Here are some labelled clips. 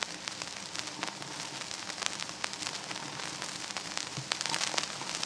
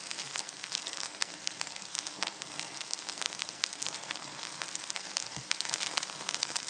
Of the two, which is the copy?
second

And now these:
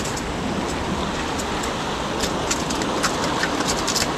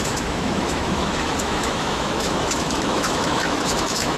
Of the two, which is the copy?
second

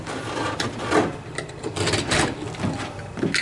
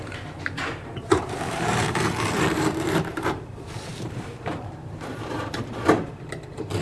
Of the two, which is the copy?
second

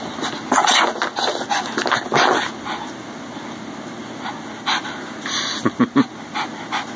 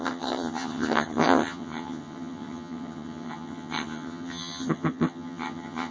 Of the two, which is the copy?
second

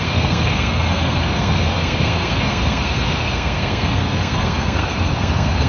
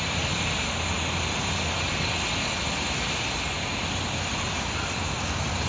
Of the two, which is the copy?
first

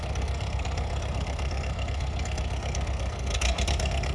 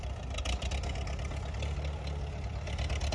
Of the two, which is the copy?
first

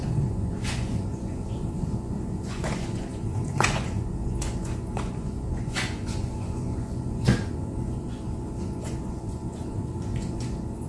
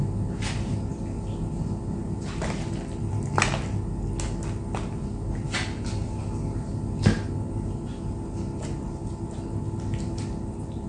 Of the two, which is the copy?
first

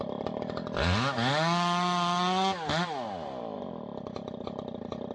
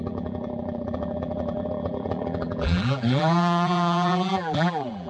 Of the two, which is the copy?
second